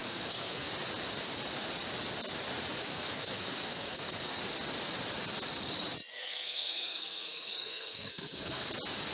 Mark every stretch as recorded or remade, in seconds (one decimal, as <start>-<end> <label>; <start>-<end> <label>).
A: 0.0-0.7 remade; 0.7-2.9 recorded; 2.9-4.4 remade; 4.4-6.1 recorded; 6.1-8.7 remade; 8.7-9.1 recorded